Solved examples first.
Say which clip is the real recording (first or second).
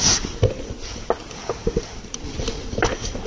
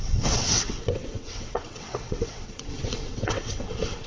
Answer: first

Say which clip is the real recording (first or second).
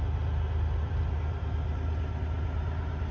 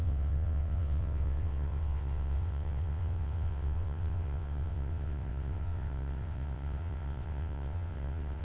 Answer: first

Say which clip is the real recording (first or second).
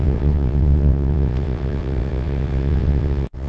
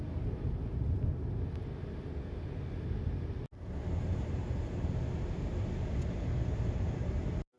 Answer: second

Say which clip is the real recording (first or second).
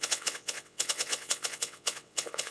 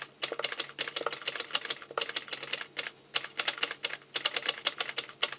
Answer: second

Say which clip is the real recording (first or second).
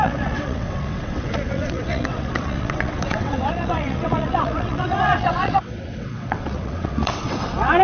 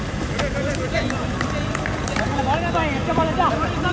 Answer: second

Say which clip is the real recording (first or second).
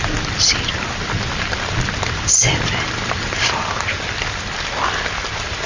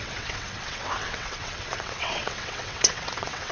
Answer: first